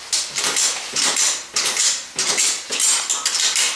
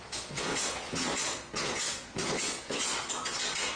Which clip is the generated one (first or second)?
second